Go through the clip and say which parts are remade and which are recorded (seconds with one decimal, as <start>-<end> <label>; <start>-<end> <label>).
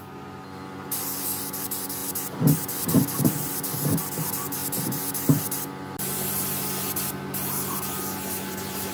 0.0-8.9 recorded